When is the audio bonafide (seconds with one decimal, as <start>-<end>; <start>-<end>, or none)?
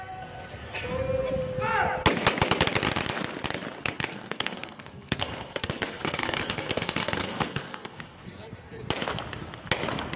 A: 0.9-3.8; 8.8-10.2